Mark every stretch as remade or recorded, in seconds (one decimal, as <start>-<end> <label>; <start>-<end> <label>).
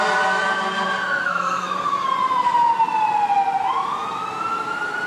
0.0-1.2 recorded; 1.2-2.1 remade; 2.1-5.1 recorded